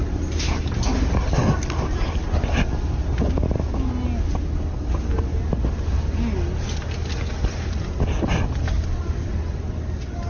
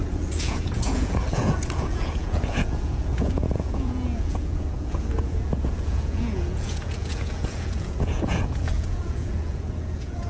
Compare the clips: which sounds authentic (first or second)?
first